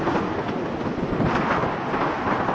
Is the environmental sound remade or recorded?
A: recorded